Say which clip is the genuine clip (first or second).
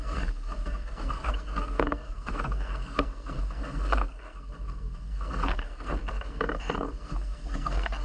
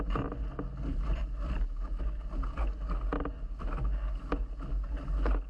second